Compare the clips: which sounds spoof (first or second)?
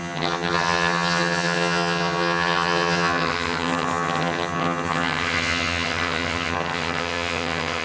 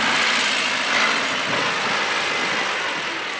first